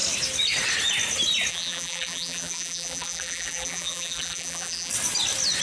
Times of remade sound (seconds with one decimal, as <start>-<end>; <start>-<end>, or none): 1.5-4.9